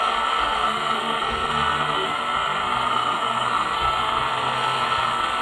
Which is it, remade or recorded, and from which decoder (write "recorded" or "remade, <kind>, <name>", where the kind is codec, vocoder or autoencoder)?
remade, codec, SNAC